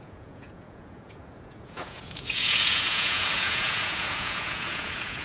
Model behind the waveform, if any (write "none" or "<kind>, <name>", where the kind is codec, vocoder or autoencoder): vocoder, Vocos